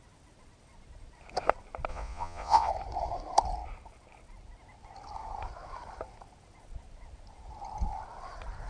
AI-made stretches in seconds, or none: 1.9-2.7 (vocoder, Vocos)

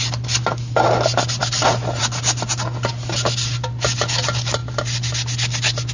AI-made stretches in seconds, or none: none

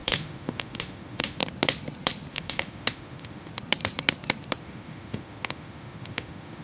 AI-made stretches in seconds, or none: 0.0-1.4 (autoencoder, DAC-VAE); 2.3-3.5; 4.6-6.6

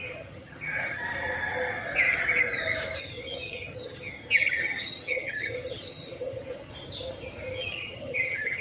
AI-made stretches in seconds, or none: 0.0-1.0 (vocoder, HiFi-GAN); 3.0-4.1; 4.6-6.7; 7.6-8.6

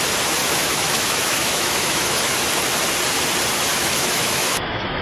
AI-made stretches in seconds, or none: 0.4-2.4 (autoencoder, DAC-VAE); 3.7-5.0

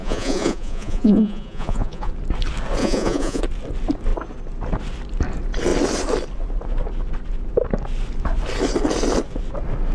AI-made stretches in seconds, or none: 0.0-2.1 (vocoder, Vocos); 2.8-3.4

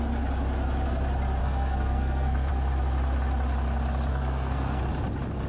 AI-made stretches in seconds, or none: 1.4-2.5 (codec, SNAC); 4.1-4.8

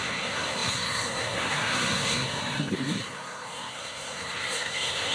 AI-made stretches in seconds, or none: 0.0-5.1 (codec, SNAC)